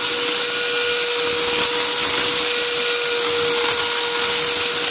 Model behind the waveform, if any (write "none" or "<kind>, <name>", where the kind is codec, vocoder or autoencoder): none